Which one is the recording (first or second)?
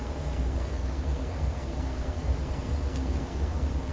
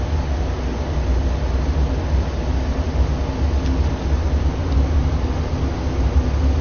second